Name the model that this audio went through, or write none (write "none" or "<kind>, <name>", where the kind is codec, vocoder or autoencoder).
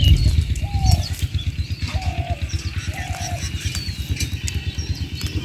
none